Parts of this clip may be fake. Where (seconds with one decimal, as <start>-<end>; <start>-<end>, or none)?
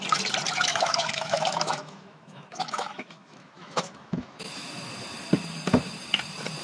0.7-4.7